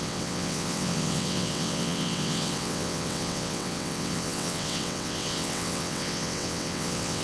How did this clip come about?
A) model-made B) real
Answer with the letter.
A